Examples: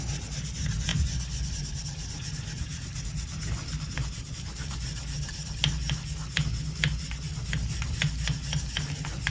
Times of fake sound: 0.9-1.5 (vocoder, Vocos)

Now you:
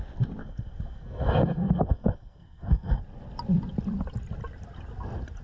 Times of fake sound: 0.4-3.0 (codec, SNAC)

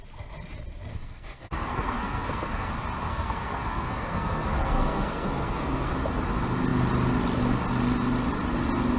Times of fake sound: 0.9-2.7 (codec, SNAC); 3.1-5.9

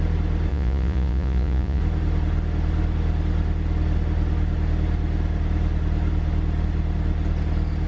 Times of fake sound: 0.5-1.8 (vocoder, Vocos)

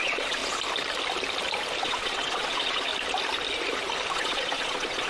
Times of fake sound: 0.0-0.4 (vocoder, Vocos); 1.8-2.9; 4.1-5.1